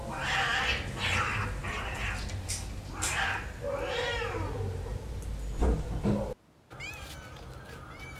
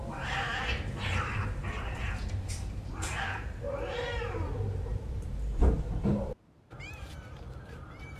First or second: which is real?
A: first